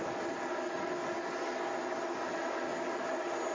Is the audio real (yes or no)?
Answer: yes